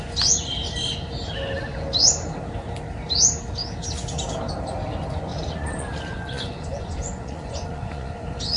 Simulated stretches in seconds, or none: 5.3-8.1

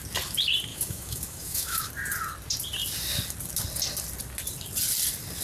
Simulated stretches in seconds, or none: 0.7-1.9

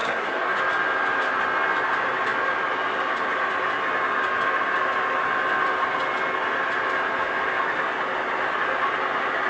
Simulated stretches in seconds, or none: 0.0-0.6

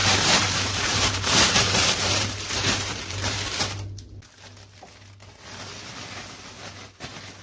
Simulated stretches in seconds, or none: 0.0-3.6

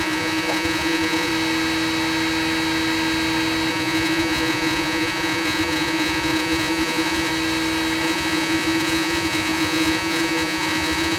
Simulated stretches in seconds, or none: 0.0-1.3; 3.7-7.3; 8.0-11.2

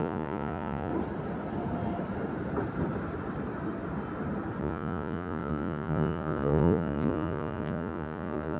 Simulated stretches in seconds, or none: 0.0-0.9; 4.6-8.6

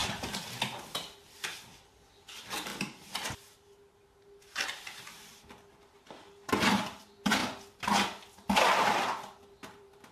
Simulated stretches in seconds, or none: 0.8-2.7; 6.5-10.1